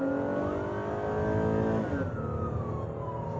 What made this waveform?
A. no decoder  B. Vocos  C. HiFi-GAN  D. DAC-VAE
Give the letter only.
A